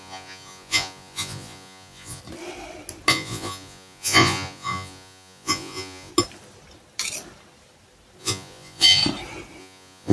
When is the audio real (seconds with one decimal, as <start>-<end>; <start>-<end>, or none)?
2.2-3.1; 6.1-8.2; 9.0-9.6